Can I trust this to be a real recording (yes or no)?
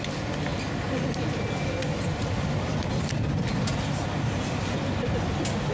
yes